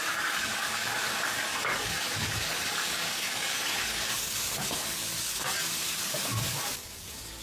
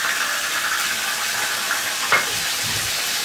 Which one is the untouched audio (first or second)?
second